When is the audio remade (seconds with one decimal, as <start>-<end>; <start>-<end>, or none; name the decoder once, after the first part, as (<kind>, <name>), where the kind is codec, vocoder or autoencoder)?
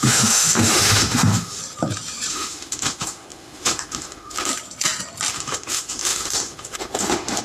0.0-1.6 (autoencoder, DAC-VAE); 2.3-4.5; 5.3-7.4